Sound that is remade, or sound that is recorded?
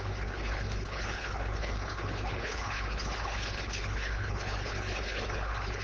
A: remade